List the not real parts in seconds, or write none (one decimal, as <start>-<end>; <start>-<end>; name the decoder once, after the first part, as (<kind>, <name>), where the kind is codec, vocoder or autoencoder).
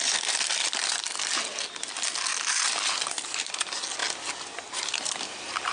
none